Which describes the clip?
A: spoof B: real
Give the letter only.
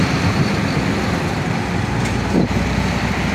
B